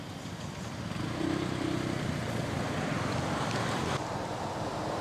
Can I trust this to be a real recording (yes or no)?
no